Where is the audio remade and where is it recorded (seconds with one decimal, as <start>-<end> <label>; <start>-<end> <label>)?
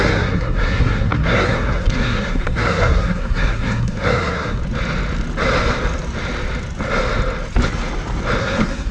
0.0-4.6 remade; 4.6-8.4 recorded; 8.4-8.9 remade